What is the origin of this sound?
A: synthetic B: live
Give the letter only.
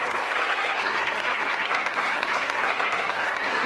A